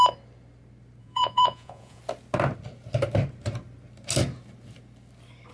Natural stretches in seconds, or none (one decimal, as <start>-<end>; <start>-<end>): 0.0-1.0; 2.0-5.5

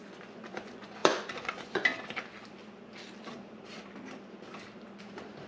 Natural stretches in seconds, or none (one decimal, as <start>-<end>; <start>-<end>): 1.9-5.0

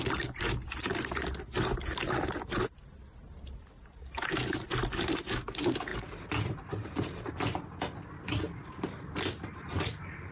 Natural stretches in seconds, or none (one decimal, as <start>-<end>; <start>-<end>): 0.0-10.3

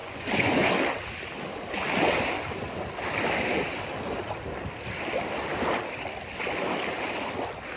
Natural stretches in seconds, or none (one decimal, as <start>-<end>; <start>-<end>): 0.7-7.8

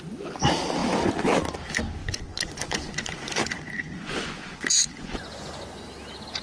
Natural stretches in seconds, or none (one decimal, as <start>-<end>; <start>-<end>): 0.0-2.0; 5.8-6.4